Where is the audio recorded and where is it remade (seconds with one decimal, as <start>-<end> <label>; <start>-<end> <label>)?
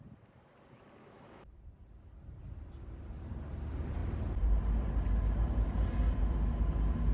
0.0-1.0 recorded; 1.0-1.6 remade; 1.6-7.1 recorded